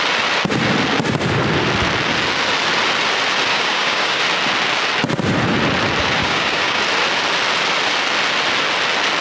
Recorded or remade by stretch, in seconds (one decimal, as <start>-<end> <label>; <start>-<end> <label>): 0.0-3.5 recorded; 3.5-4.2 remade; 4.2-6.2 recorded; 6.2-6.8 remade; 6.8-9.2 recorded